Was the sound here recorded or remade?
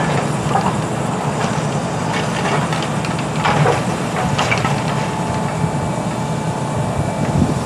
recorded